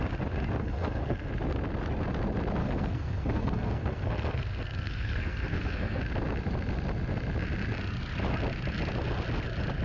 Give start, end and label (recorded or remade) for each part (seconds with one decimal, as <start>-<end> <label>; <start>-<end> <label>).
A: 0.0-0.6 recorded; 0.6-1.3 remade; 1.3-2.6 recorded; 2.6-6.0 remade; 6.0-9.8 recorded